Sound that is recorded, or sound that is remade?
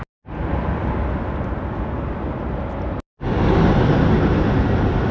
recorded